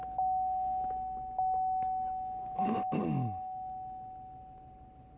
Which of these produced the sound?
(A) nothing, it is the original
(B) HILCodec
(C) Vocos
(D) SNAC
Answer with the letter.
A